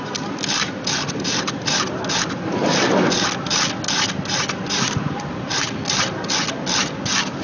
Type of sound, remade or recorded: recorded